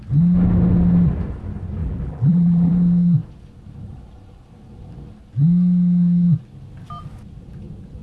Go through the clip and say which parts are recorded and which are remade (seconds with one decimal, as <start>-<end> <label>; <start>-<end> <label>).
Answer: 0.0-1.8 recorded; 1.8-2.7 remade; 2.7-8.0 recorded